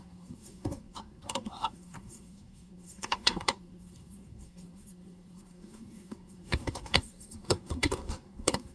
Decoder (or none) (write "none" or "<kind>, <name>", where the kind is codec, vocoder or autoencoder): codec, SNAC